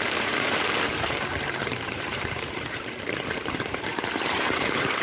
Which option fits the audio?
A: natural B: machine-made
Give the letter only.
B